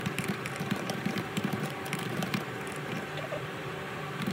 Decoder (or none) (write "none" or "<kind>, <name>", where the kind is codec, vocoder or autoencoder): vocoder, BigVGAN v2